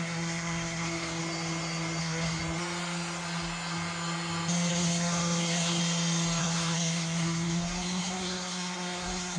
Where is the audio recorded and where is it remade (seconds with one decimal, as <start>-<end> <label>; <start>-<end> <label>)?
0.0-1.2 remade; 1.2-2.0 recorded; 2.0-2.4 remade; 2.4-4.7 recorded; 4.7-5.8 remade; 5.8-6.4 recorded; 6.4-9.4 remade